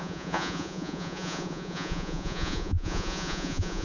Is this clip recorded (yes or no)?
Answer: no